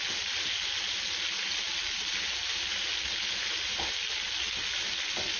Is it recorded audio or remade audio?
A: recorded